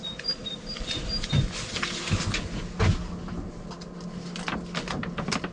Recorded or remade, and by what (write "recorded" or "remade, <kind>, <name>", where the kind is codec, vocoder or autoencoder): recorded